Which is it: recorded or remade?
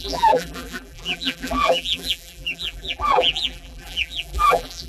remade